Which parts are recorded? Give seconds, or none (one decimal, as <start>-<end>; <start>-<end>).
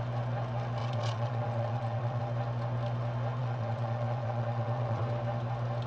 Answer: 0.0-0.8; 2.2-3.4; 5.0-5.9